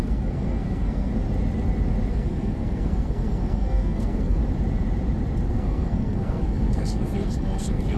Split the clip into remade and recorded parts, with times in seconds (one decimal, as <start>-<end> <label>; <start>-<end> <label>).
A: 0.0-1.1 remade; 1.1-2.1 recorded; 2.1-4.4 remade; 4.4-5.5 recorded; 5.5-8.0 remade